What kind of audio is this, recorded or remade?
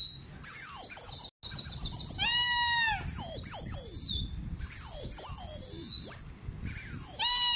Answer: recorded